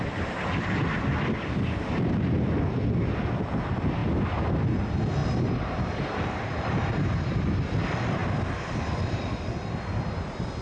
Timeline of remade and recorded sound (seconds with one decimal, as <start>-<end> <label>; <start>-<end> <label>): 0.0-5.2 recorded; 5.2-7.3 remade; 7.3-10.6 recorded